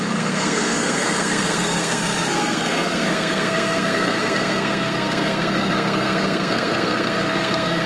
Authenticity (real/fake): fake